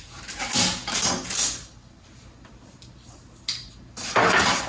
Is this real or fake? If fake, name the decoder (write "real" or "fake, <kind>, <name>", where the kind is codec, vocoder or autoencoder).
real